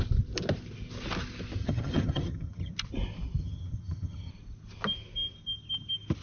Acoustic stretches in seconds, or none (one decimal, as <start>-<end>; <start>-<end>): 0.0-1.6; 2.7-3.4; 4.3-6.2